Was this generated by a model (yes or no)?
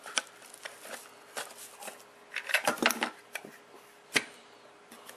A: no